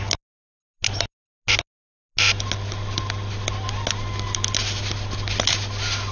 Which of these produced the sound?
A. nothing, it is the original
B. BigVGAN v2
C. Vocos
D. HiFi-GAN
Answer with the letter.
A